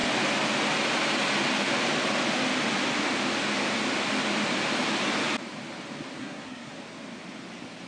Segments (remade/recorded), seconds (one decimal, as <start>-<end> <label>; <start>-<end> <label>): 0.0-6.2 recorded; 6.2-6.7 remade; 6.7-7.9 recorded